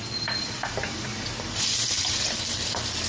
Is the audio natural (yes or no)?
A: yes